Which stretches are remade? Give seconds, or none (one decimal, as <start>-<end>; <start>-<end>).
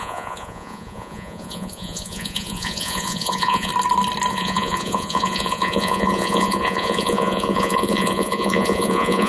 0.0-3.7; 4.3-9.3